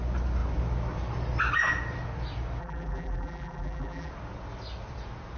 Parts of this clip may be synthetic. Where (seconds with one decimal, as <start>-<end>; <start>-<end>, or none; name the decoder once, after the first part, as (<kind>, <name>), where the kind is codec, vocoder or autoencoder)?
2.6-4.1 (vocoder, BigVGAN v2)